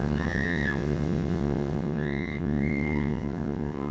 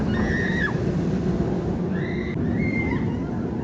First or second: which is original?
second